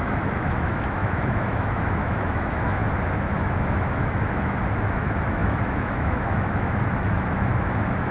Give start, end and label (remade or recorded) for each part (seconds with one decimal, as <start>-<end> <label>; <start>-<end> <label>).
0.0-8.1 remade